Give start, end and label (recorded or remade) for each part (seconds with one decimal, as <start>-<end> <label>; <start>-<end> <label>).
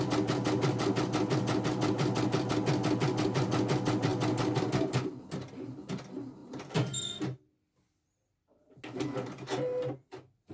0.0-6.4 recorded; 6.4-7.0 remade; 7.0-10.5 recorded